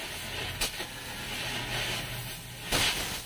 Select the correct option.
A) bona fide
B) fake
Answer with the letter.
A